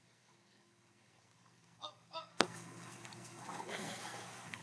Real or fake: fake